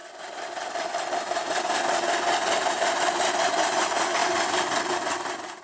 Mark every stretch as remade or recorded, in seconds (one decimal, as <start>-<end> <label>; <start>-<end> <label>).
0.0-2.7 recorded; 2.7-4.2 remade; 4.2-4.9 recorded; 4.9-5.6 remade